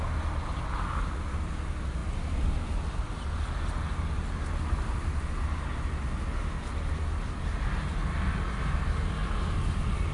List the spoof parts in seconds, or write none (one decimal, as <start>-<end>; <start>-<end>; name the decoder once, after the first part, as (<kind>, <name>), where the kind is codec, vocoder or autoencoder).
none